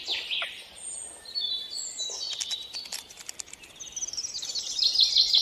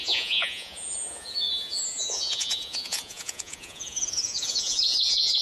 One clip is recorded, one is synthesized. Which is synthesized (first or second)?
second